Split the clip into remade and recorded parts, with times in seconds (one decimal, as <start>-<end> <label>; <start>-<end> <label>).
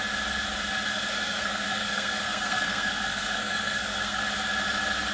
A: 0.0-1.1 recorded; 1.1-4.2 remade; 4.2-5.1 recorded